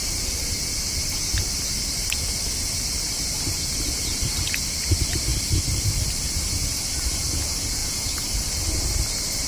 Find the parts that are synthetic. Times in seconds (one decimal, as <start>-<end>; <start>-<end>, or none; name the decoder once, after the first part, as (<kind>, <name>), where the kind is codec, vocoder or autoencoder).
3.7-4.2 (vocoder, BigVGAN v2); 5.3-5.8